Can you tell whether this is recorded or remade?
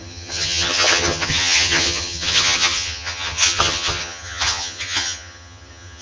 remade